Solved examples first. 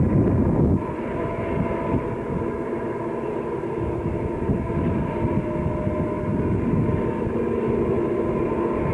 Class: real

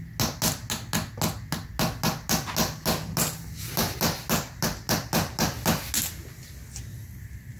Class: real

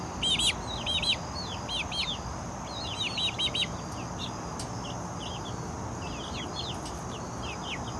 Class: real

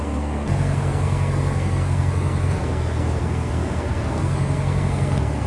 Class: fake